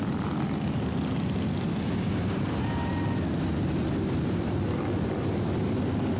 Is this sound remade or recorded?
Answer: recorded